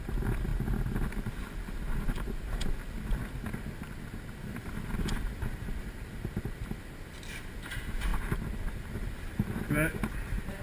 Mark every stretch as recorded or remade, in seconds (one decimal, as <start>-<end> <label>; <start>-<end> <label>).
0.0-10.6 recorded